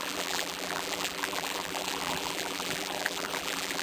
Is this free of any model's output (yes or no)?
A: no